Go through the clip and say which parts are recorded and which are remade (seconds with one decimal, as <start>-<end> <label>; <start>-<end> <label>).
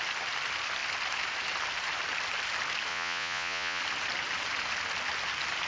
0.0-2.9 recorded; 2.9-3.8 remade; 3.8-5.7 recorded